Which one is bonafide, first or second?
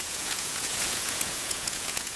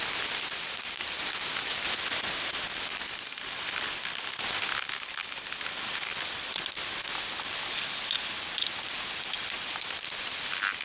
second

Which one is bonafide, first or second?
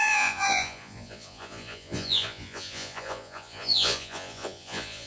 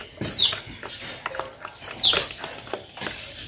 second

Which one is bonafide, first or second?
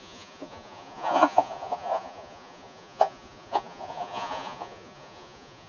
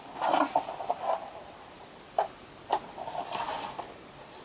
second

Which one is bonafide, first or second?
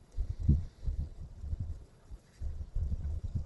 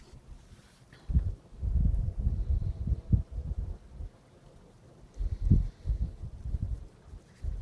second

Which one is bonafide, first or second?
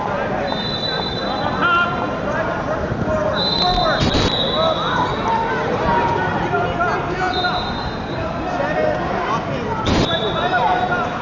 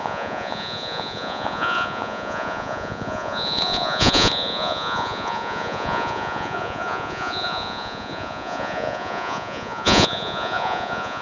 first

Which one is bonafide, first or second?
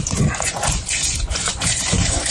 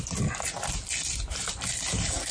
second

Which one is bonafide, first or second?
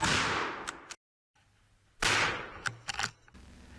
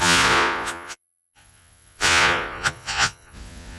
first